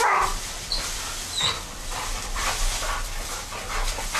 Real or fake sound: fake